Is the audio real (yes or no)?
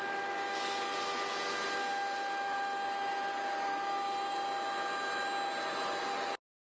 yes